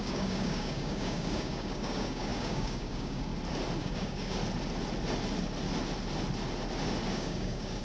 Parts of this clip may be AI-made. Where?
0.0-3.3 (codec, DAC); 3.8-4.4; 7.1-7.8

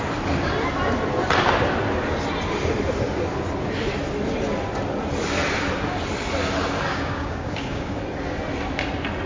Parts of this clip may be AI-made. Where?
6.9-8.0 (codec, DAC)